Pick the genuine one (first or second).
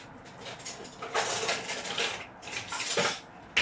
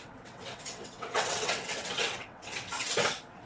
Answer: first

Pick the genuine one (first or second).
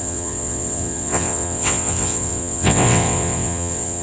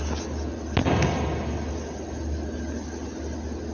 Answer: second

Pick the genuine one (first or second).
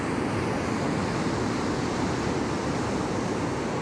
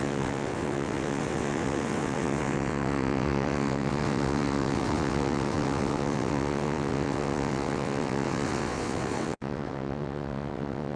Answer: first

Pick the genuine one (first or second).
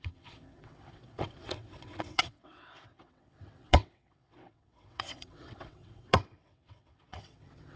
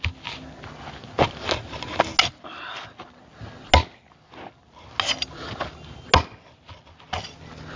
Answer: second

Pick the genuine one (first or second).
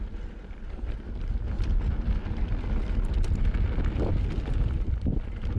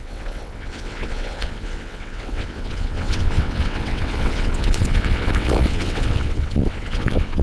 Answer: first